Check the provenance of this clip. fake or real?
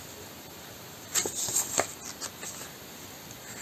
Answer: real